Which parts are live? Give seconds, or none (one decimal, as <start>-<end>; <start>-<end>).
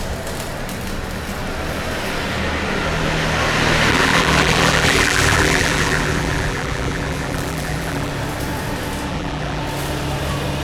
0.0-3.9; 8.1-9.1; 9.6-10.6